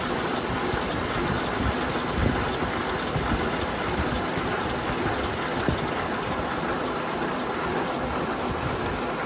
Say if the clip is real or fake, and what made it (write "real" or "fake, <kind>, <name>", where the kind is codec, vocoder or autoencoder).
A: real